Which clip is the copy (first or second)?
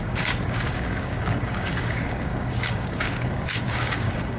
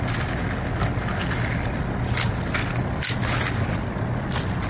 first